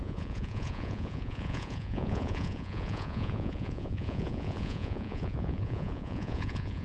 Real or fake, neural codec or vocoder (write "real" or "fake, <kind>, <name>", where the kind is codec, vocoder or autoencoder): fake, vocoder, Vocos